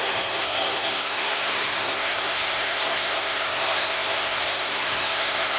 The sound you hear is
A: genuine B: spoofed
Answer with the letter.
B